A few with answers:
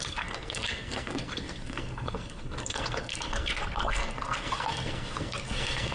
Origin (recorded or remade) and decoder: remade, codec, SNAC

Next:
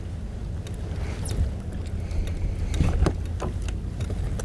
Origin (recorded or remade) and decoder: recorded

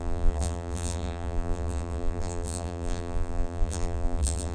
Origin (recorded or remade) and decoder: remade, vocoder, BigVGAN v2